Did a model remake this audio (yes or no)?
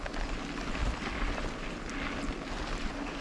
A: no